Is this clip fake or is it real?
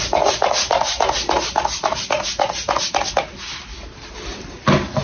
real